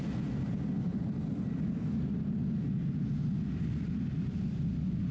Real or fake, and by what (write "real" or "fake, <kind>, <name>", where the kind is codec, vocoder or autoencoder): real